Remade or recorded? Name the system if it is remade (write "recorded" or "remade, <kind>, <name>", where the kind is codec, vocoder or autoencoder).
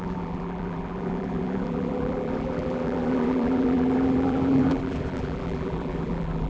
remade, vocoder, BigVGAN v2